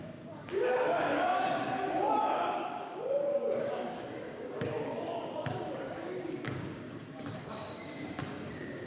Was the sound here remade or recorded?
remade